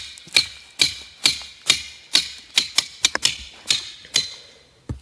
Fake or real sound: real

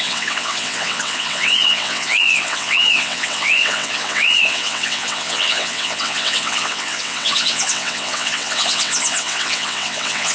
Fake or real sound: fake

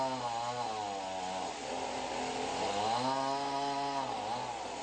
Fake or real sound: real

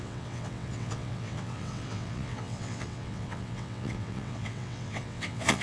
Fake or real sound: fake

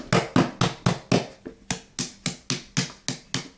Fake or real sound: real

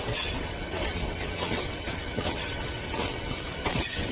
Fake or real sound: fake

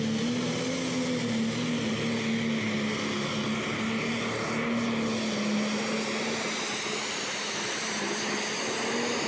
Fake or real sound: real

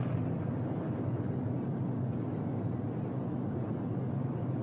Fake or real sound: real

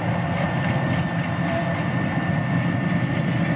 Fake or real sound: real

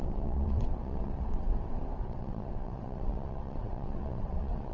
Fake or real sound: fake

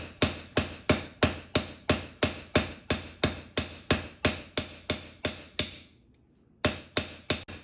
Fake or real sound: real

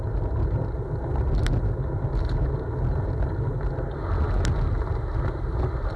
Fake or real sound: real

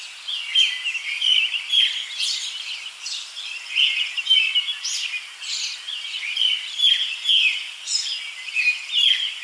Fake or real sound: real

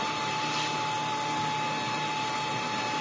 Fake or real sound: real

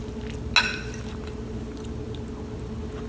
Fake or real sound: real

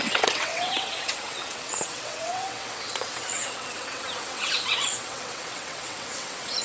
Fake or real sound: fake